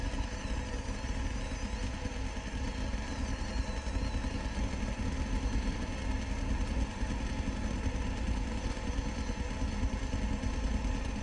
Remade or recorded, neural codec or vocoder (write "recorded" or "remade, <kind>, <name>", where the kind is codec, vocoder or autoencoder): recorded